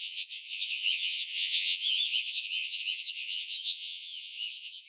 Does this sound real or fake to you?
fake